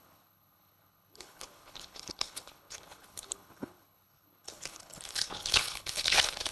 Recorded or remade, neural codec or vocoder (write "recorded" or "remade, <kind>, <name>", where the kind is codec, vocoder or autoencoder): remade, codec, HILCodec